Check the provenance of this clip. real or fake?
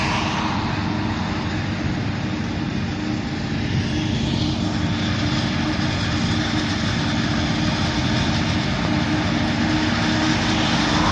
real